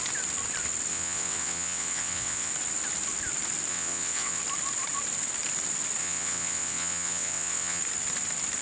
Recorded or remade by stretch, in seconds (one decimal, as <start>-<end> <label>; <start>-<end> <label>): 0.0-0.9 recorded; 0.9-2.5 remade; 2.5-3.7 recorded; 3.7-4.4 remade; 4.4-6.0 recorded; 6.0-7.8 remade; 7.8-8.6 recorded